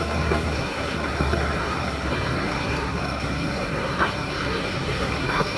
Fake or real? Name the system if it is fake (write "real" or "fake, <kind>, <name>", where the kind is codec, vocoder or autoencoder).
fake, codec, SNAC